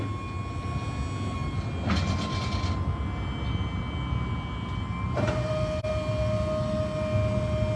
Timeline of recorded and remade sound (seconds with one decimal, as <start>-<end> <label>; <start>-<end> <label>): 0.0-7.8 recorded